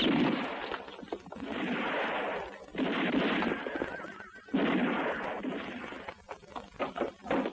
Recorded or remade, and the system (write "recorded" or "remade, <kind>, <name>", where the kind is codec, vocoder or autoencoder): recorded